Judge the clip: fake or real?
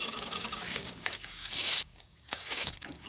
fake